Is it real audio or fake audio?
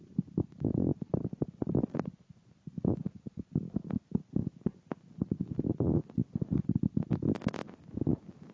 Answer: real